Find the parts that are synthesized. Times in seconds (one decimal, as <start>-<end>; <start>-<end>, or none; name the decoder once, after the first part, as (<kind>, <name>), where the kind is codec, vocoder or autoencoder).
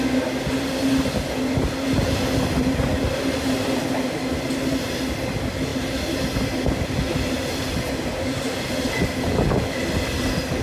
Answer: none